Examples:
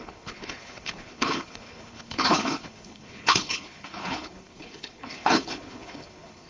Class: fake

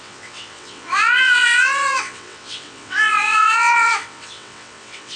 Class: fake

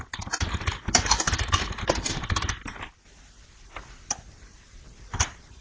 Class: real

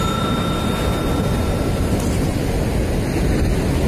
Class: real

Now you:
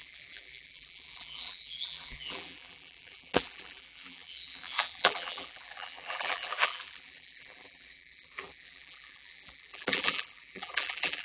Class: fake